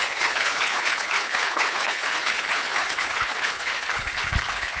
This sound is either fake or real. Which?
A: fake